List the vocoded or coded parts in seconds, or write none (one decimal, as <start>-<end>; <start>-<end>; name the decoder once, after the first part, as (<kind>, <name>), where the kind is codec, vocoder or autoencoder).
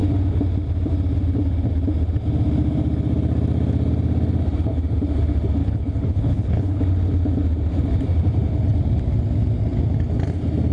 5.6-6.8 (codec, HILCodec)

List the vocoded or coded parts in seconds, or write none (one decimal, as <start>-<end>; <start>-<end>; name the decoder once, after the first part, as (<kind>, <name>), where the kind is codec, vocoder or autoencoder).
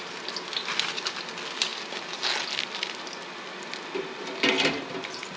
none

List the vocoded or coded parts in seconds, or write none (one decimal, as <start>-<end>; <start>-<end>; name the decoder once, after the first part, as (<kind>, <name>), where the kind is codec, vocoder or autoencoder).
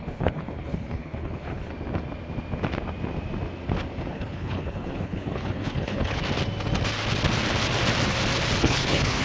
0.0-1.7 (codec, HILCodec); 4.1-6.2; 8.6-9.2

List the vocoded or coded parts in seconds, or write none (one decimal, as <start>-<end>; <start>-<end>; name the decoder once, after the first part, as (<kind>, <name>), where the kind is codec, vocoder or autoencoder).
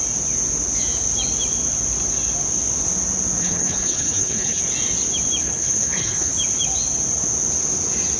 3.4-4.6 (codec, HILCodec); 5.4-6.3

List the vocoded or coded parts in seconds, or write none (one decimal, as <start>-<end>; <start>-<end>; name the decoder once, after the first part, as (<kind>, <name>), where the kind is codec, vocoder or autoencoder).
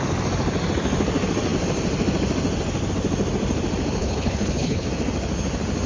4.0-4.9 (codec, HILCodec)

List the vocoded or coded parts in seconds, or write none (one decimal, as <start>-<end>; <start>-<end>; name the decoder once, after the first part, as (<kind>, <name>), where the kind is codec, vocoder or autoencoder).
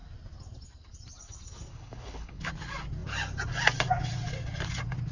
1.7-2.5 (codec, HILCodec)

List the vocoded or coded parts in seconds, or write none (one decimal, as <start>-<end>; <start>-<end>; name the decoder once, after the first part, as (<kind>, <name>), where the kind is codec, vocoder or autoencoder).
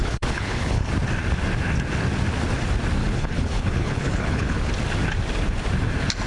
0.0-0.9 (codec, HILCodec); 3.0-4.7